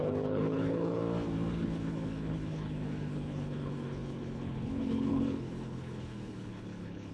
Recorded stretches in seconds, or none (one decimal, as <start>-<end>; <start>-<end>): 1.0-1.5